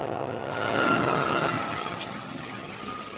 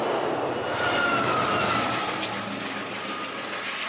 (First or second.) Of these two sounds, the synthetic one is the first